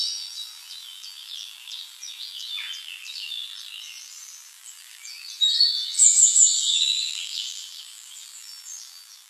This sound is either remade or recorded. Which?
remade